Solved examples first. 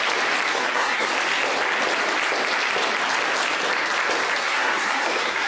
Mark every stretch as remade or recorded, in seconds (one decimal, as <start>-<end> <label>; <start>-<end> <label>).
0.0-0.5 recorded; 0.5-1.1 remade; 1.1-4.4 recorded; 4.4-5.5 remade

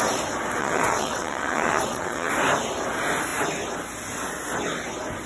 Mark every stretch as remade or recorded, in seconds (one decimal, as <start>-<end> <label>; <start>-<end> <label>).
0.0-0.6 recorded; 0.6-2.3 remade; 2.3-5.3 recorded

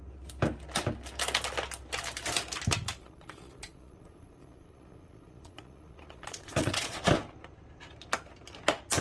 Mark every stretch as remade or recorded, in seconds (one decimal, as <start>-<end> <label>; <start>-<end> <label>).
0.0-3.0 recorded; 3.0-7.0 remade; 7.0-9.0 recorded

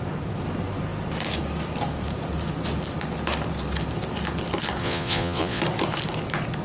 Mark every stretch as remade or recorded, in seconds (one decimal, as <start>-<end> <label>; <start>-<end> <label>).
0.0-4.8 recorded; 4.8-5.6 remade; 5.6-6.6 recorded

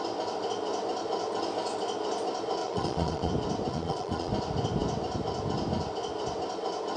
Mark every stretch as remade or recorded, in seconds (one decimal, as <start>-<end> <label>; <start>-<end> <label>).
0.0-2.6 recorded; 2.6-3.3 remade; 3.3-3.7 recorded; 3.7-4.3 remade; 4.3-7.0 recorded

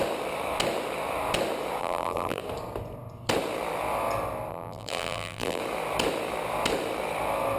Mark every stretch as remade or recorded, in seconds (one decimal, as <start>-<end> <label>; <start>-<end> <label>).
0.0-1.8 recorded; 1.8-2.4 remade; 2.4-4.5 recorded; 4.5-5.6 remade; 5.6-7.6 recorded

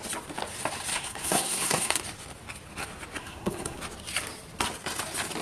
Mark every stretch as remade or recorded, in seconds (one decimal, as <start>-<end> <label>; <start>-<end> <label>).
0.0-0.9 recorded; 0.9-2.0 remade; 2.0-3.2 recorded; 3.2-3.8 remade; 3.8-5.4 recorded

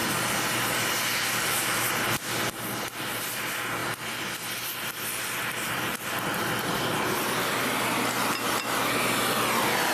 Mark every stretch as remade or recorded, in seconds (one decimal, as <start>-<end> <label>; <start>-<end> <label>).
0.0-9.9 recorded